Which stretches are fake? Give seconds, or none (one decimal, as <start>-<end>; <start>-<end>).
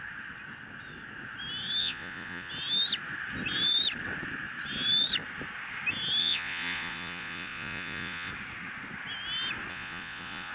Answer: 1.8-2.5; 6.2-8.3; 9.7-10.5